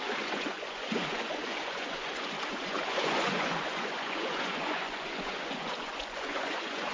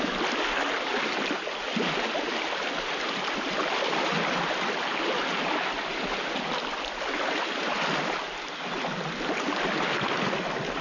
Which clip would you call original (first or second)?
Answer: second